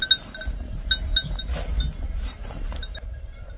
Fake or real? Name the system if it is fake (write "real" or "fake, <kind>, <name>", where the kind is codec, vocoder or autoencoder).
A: real